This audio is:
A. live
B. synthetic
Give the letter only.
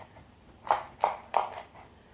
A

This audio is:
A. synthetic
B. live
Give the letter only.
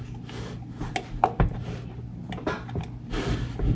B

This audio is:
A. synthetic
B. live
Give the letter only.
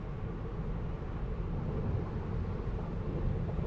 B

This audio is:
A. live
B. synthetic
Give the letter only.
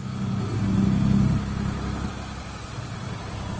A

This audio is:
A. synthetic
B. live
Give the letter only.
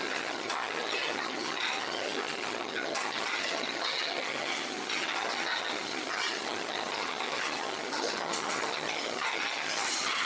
A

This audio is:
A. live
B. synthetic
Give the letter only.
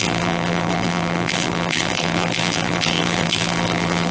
B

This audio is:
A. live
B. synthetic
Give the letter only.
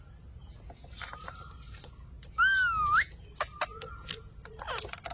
A